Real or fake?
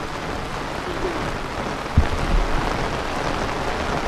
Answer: real